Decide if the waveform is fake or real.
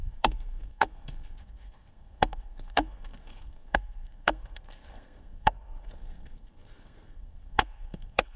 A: fake